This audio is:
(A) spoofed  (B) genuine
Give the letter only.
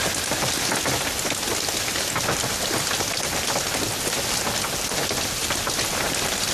B